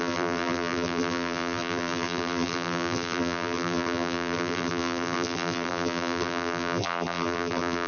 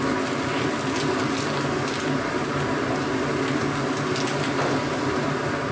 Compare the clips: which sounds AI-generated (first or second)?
first